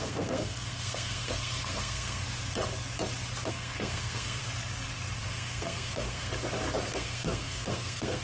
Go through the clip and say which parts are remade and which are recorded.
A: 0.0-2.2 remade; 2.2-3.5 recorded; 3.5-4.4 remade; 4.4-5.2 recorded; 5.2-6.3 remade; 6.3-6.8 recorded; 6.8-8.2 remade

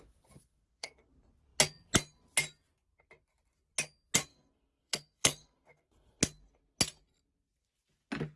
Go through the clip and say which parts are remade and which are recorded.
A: 0.0-0.4 recorded; 0.4-1.1 remade; 1.1-4.3 recorded; 4.3-6.2 remade; 6.2-8.4 recorded

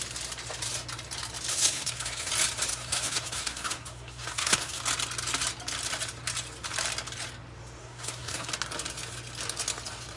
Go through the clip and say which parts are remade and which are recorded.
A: 0.0-1.5 recorded; 1.5-2.3 remade; 2.3-2.7 recorded; 2.7-4.8 remade; 4.8-7.8 recorded; 7.8-8.5 remade; 8.5-10.2 recorded

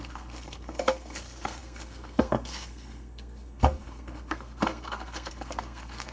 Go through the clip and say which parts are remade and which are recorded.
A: 0.0-6.1 remade

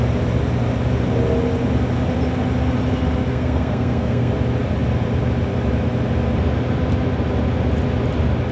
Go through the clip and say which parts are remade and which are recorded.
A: 0.0-3.3 recorded; 3.3-4.3 remade; 4.3-8.5 recorded

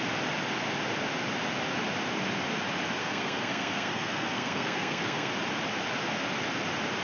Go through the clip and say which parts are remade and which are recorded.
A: 0.0-3.0 recorded; 3.0-5.3 remade; 5.3-7.0 recorded